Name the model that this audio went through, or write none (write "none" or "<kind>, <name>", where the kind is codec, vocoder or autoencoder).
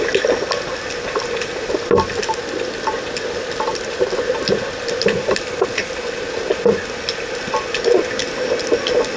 none